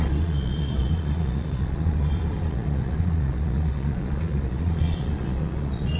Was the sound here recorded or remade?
remade